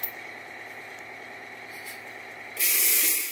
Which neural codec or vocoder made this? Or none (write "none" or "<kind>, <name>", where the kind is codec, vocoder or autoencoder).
none